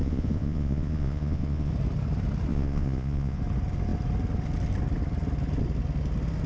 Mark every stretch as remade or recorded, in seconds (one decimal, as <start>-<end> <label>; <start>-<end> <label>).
0.0-1.7 remade; 1.7-2.5 recorded; 2.5-3.4 remade; 3.4-6.5 recorded